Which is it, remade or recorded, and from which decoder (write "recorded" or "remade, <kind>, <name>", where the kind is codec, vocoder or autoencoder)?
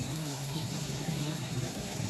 remade, codec, SNAC